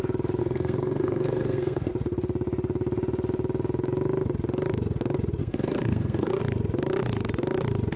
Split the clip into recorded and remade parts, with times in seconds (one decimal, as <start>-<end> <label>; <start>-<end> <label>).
0.0-0.4 recorded; 0.4-1.9 remade; 1.9-5.4 recorded; 5.4-6.4 remade; 6.4-8.0 recorded